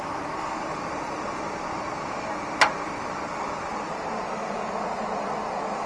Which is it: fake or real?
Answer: real